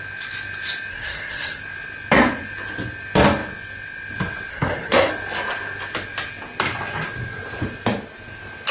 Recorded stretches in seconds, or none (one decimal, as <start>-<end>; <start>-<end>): 0.0-0.9; 1.6-4.5; 5.1-8.7